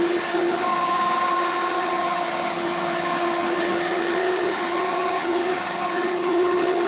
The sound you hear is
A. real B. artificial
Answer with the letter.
B